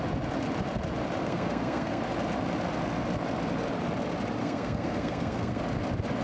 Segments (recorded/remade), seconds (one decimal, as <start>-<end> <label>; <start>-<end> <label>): 0.0-1.2 recorded; 1.2-2.0 remade; 2.0-4.4 recorded; 4.4-5.6 remade; 5.6-6.2 recorded